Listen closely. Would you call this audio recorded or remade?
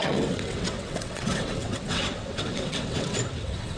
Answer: remade